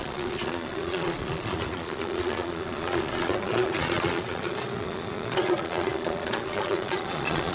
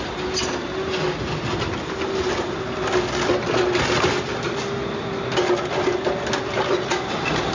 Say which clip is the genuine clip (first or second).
second